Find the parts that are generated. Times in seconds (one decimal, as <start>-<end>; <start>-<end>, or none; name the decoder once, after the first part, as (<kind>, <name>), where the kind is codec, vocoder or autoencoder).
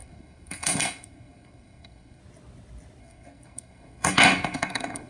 0.0-2.2 (codec, SNAC); 3.0-5.1